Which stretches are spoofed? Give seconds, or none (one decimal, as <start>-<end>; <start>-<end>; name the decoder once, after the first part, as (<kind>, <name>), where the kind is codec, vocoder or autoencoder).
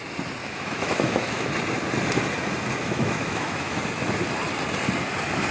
0.4-1.5 (autoencoder, DAC-VAE); 2.8-3.8